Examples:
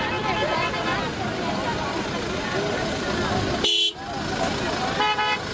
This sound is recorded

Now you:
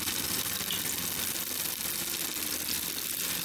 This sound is recorded